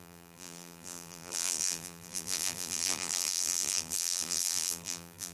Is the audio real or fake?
fake